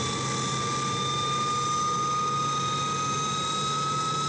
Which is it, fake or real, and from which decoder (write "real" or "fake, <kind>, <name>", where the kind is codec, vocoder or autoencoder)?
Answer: real